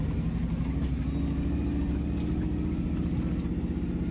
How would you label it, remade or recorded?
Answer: recorded